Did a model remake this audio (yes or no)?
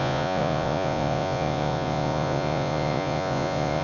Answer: yes